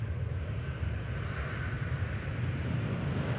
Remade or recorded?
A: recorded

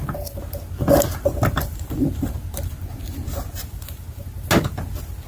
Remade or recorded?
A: recorded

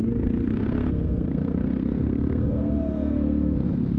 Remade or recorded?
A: remade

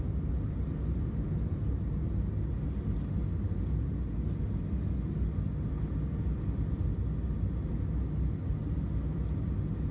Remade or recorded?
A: recorded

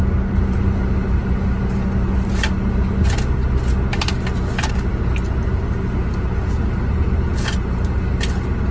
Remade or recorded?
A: recorded